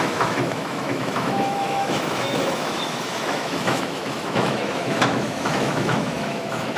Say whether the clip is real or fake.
fake